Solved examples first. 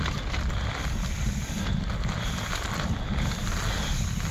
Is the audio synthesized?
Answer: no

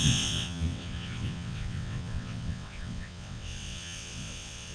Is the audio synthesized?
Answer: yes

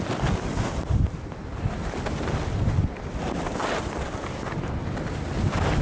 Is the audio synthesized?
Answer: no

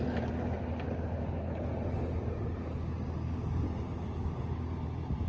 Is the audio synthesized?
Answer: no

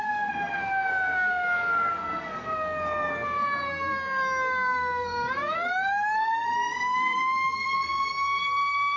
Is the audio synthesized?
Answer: yes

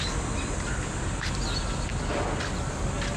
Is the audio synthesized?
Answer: no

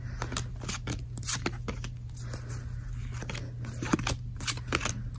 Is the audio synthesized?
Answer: no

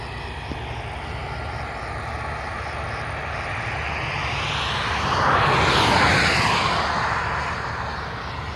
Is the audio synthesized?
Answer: no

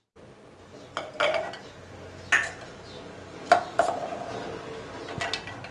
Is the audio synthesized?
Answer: no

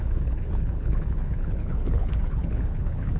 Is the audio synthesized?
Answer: yes